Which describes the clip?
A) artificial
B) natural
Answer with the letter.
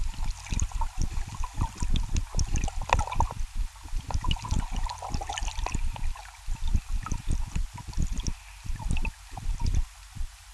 B